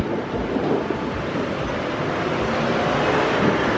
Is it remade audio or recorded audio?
recorded